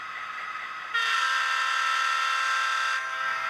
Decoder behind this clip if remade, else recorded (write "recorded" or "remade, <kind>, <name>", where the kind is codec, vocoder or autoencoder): recorded